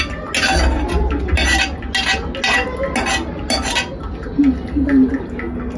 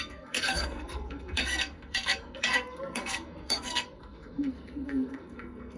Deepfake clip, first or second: second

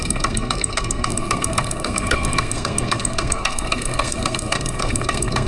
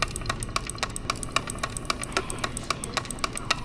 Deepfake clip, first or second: first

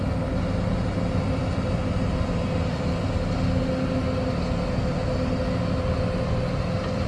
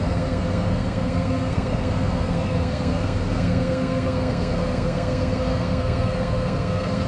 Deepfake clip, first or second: second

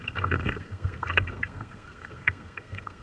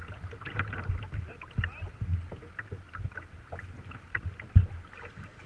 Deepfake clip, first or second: first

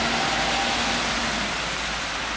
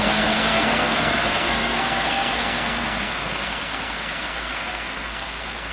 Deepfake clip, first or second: second